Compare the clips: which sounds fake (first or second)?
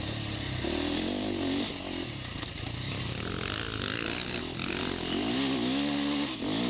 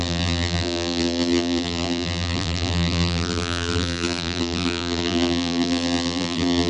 second